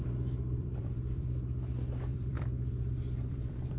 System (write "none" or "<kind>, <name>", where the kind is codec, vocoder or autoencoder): vocoder, BigVGAN v2